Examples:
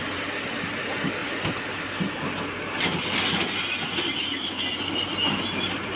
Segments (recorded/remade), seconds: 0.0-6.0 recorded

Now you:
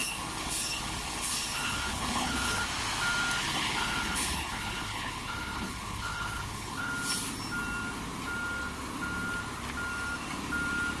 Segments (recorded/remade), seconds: 0.0-2.6 remade; 2.6-3.4 recorded; 3.4-6.9 remade; 6.9-11.0 recorded